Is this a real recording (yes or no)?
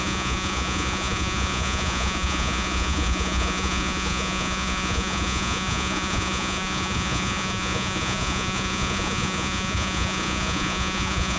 no